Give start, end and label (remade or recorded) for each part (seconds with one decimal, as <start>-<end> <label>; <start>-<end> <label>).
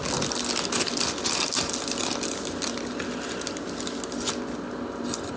0.0-5.4 recorded